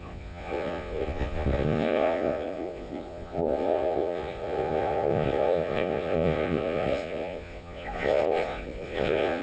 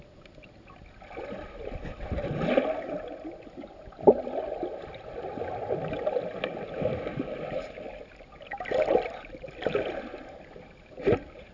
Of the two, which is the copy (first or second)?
first